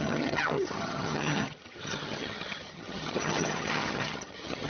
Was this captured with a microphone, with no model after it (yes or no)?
no